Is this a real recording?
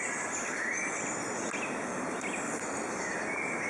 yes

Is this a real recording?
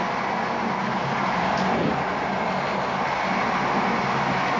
yes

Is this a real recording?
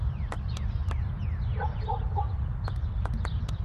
yes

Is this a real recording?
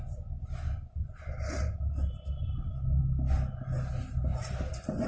yes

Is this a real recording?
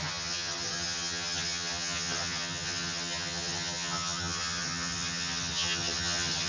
no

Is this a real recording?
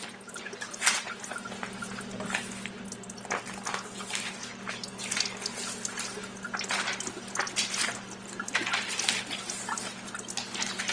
yes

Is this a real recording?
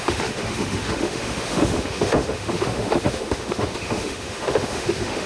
no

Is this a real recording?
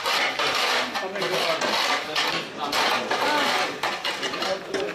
yes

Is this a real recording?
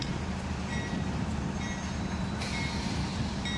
yes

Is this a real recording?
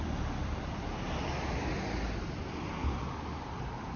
yes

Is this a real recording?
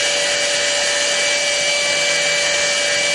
yes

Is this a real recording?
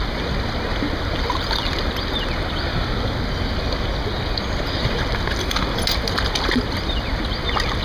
yes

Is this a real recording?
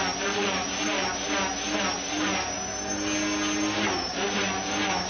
yes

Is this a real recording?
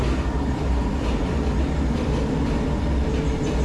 yes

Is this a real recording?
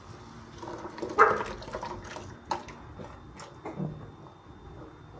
yes